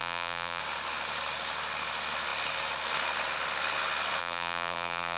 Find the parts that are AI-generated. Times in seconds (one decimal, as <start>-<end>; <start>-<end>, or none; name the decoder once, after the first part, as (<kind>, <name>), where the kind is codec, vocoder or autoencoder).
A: 0.0-0.6 (vocoder, BigVGAN v2); 4.2-5.2